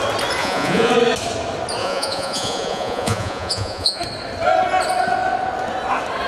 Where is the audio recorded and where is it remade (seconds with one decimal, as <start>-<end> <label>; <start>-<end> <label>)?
0.0-0.4 recorded; 0.4-0.9 remade; 0.9-1.8 recorded; 1.8-4.0 remade; 4.0-6.3 recorded